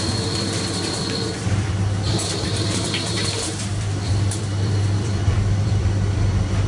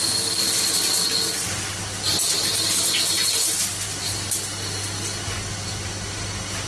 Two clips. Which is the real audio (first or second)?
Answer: second